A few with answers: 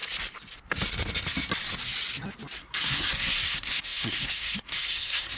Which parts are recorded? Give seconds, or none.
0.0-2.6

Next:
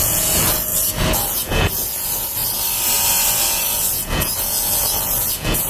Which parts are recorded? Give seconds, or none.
2.4-3.3

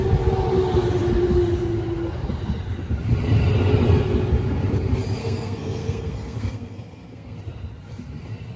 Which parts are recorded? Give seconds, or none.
0.0-5.2; 7.4-8.6

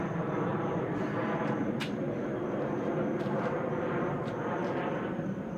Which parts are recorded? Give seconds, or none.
none

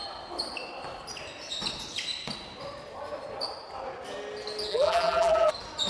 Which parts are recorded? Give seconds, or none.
0.0-4.7; 5.5-5.9

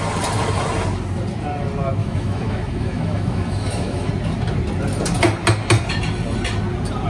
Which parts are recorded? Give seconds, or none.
0.0-2.0; 4.1-7.1

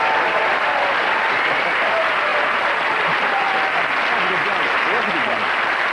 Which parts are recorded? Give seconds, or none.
0.0-5.9